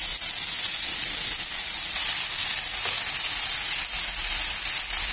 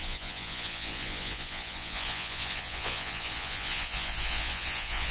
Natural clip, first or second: first